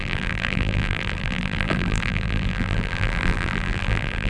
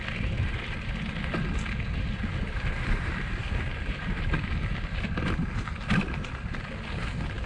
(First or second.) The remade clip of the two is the first